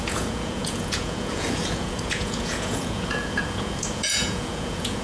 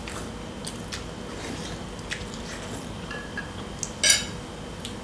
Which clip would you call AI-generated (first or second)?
first